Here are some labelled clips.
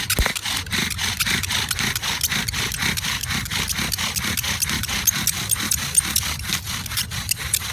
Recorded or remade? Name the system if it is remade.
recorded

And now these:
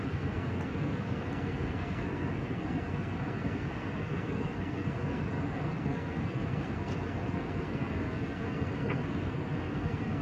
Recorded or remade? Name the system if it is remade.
remade, codec, SNAC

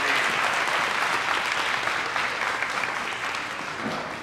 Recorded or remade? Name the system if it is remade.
recorded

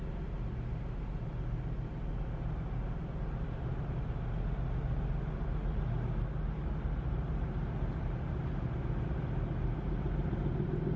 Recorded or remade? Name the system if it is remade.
recorded